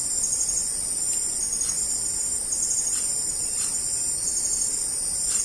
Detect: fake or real real